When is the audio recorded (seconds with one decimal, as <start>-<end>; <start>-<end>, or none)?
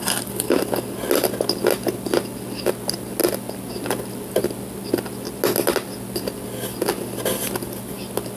0.0-8.4